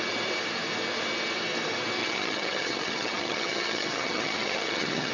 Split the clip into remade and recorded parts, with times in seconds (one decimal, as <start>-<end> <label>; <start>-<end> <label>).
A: 0.0-2.0 recorded; 2.0-5.1 remade